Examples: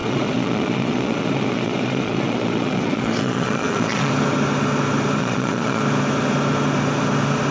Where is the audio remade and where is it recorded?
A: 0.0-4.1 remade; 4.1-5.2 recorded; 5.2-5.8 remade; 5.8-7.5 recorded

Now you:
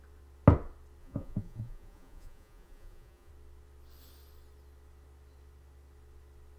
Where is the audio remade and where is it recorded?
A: 0.0-1.0 recorded; 1.0-3.3 remade; 3.3-6.6 recorded